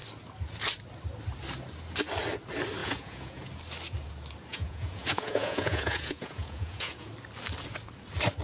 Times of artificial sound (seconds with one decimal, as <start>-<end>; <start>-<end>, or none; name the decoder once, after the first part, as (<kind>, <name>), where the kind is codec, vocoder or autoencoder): 2.8-3.5 (vocoder, Vocos); 4.5-7.1